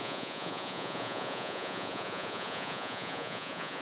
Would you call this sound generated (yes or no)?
yes